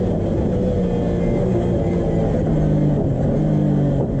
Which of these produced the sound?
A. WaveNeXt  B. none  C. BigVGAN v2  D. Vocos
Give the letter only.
B